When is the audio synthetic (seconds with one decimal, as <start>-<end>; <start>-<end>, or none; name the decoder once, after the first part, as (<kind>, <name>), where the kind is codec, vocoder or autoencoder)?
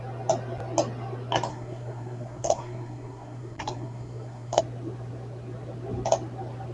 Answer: 1.5-4.6 (codec, SNAC)